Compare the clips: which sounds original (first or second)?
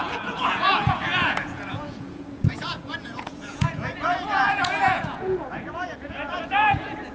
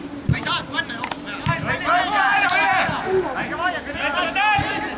second